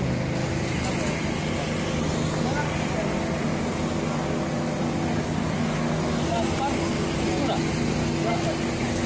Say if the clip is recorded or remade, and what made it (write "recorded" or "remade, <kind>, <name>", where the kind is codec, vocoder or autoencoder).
recorded